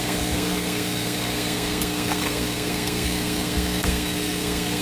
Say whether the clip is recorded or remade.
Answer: remade